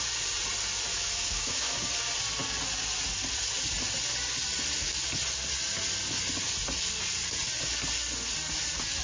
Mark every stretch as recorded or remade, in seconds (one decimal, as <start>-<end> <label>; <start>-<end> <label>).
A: 0.0-0.9 recorded; 0.9-1.8 remade; 1.8-9.0 recorded